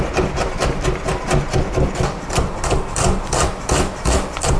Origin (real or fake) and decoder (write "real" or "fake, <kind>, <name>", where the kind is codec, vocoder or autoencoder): real